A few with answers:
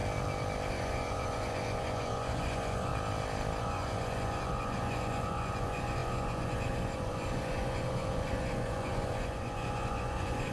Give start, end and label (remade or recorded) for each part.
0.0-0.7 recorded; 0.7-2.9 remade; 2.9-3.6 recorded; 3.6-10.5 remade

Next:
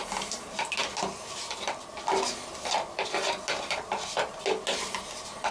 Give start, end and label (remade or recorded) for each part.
0.0-5.5 recorded

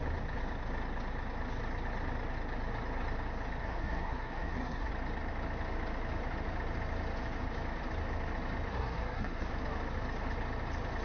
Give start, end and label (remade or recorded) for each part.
0.0-3.6 recorded; 3.6-4.9 remade; 4.9-8.7 recorded; 8.7-9.5 remade; 9.5-11.0 recorded